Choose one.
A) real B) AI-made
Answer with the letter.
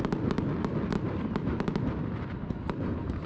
A